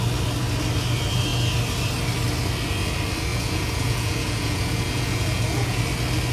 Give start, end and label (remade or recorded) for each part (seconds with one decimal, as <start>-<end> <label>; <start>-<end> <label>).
0.0-3.3 recorded; 3.3-5.8 remade; 5.8-6.3 recorded